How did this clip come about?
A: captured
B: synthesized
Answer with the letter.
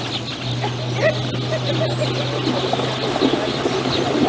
A